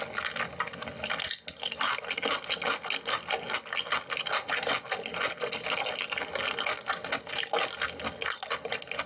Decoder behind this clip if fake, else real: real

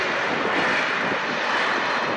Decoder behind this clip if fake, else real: real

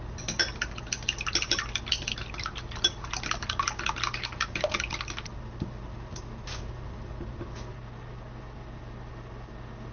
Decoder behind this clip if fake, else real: real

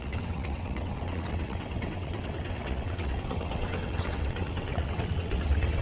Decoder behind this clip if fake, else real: fake, vocoder, WaveNeXt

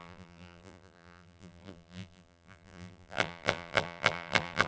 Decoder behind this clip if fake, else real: fake, vocoder, BigVGAN v2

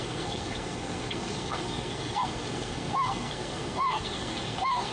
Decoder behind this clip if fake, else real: fake, codec, SNAC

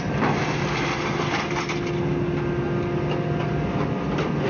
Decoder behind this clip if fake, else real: real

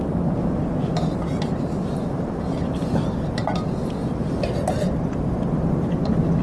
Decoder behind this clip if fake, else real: real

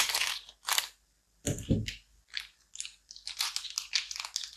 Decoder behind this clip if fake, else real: real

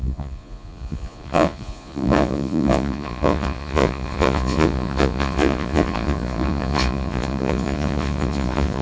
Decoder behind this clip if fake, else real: fake, vocoder, Vocos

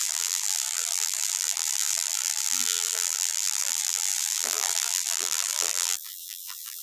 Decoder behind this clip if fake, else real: fake, vocoder, BigVGAN v2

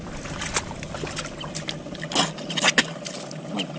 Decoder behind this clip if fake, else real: real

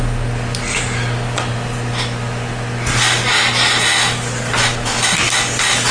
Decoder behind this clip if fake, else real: real